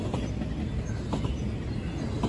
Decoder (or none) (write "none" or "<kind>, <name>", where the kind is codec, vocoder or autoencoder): none